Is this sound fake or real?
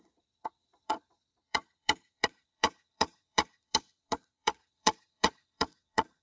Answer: fake